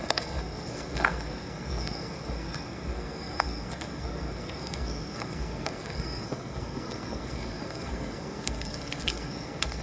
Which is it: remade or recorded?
remade